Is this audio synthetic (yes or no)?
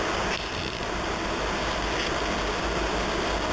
no